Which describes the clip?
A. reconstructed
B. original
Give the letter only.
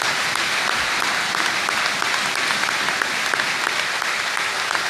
B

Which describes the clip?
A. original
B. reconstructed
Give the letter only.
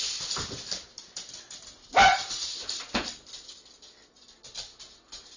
A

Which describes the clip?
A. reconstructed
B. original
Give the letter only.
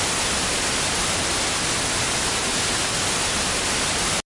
B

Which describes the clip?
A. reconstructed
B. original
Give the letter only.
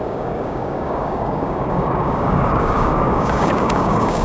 A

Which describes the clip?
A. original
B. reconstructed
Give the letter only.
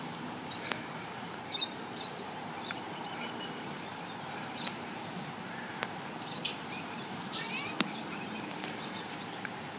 B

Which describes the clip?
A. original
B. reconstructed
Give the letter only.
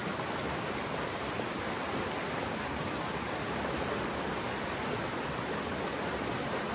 A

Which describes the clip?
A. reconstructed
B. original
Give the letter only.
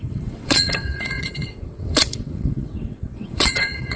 A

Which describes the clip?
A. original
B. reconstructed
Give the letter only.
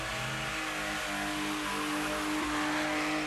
A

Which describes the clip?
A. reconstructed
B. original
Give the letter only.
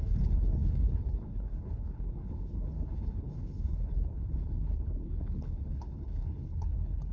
A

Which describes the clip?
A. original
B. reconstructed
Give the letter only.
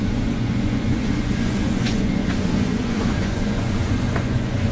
B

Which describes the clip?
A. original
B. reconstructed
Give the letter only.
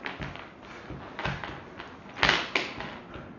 A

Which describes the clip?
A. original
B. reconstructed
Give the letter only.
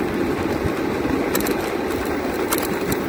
A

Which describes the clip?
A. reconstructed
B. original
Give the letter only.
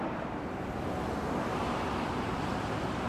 B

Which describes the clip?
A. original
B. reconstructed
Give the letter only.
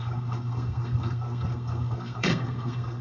B